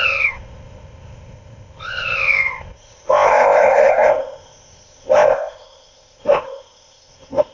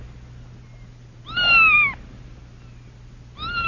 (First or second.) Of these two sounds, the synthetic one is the first